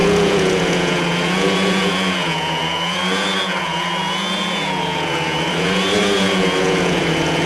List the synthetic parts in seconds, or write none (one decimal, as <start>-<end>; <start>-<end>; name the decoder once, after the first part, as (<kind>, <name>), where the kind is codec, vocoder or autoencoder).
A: 0.0-7.5 (vocoder, Vocos)